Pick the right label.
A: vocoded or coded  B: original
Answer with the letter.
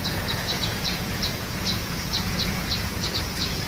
A